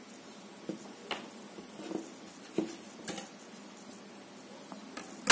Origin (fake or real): real